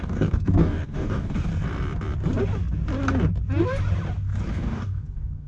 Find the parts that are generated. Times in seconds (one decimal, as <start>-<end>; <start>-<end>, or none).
0.0-1.5; 4.5-5.5